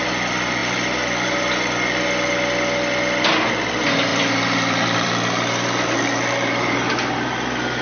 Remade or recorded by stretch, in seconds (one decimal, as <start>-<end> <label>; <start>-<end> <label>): 0.0-4.1 recorded; 4.1-6.9 remade; 6.9-7.8 recorded